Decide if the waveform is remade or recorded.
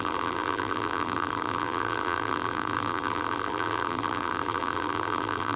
remade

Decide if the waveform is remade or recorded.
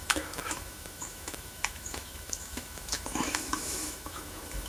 remade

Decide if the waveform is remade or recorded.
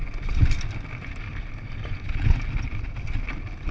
recorded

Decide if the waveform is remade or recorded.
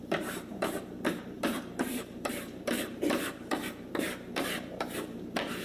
remade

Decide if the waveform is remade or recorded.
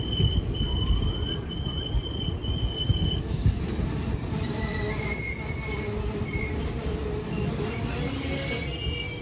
recorded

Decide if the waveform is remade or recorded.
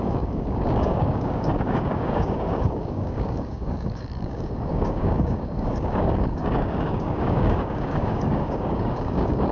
remade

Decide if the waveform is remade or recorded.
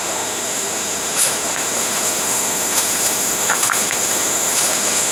remade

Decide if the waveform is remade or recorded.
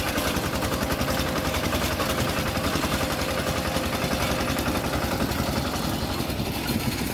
recorded